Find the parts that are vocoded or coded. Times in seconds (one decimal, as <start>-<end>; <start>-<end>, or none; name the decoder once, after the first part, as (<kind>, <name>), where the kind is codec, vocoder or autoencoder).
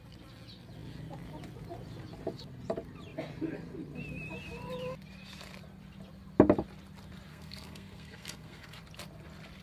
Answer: 7.3-8.8 (codec, SNAC)